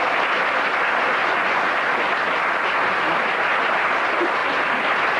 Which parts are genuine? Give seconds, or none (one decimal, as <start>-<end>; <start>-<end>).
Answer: 0.0-1.2; 1.8-5.2